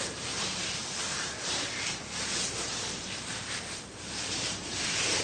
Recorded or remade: remade